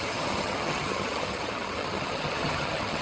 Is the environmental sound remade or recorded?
remade